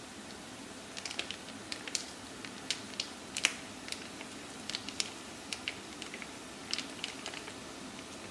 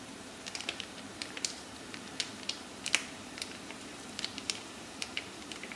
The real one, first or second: first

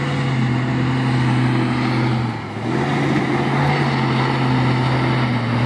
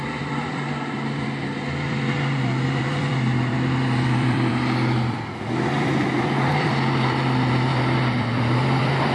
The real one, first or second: first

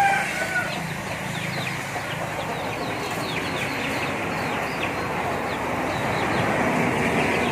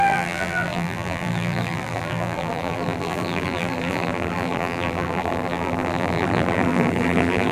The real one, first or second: first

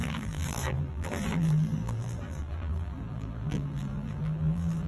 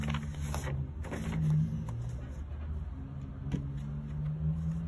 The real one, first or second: second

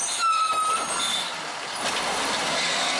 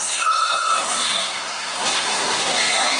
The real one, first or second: first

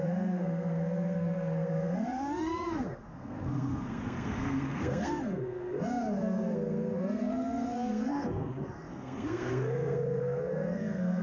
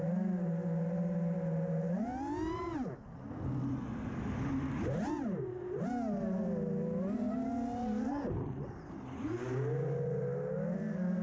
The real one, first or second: second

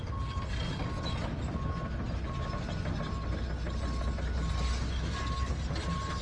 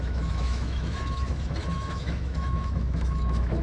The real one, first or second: first